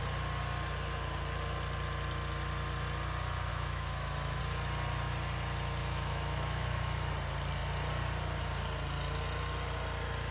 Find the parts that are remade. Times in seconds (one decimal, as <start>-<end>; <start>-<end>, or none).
3.5-4.4; 5.8-7.1